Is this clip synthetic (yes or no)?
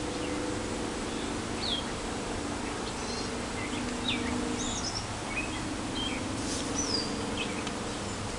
no